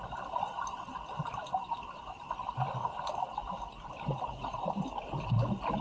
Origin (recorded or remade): recorded